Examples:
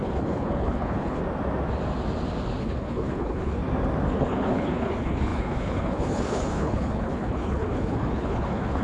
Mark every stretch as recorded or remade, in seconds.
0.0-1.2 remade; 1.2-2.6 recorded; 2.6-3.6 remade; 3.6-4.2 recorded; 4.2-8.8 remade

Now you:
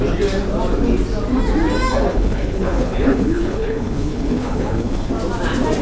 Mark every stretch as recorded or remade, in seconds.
0.0-2.1 recorded; 2.1-5.1 remade; 5.1-5.8 recorded

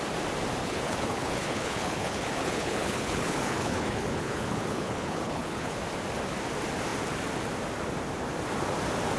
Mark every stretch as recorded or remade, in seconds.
0.0-0.6 recorded; 0.6-5.8 remade; 5.8-9.2 recorded

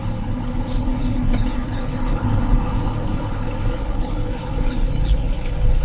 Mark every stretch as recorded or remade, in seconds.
0.0-5.8 remade

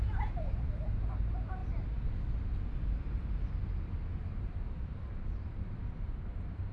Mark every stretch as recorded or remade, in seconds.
0.0-6.7 recorded

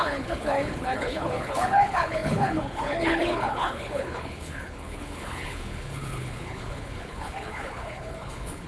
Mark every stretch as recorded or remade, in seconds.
0.0-8.7 remade

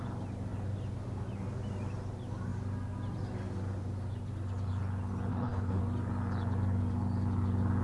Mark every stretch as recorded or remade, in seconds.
0.0-5.3 recorded; 5.3-5.8 remade; 5.8-7.8 recorded

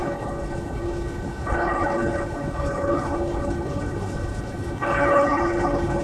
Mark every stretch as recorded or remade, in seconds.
0.0-6.0 remade